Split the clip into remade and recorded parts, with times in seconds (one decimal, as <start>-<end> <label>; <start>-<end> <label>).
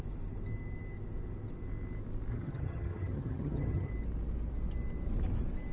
0.0-2.3 recorded; 2.3-3.9 remade; 3.9-5.7 recorded